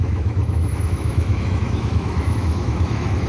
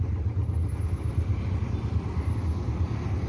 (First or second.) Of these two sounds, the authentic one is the second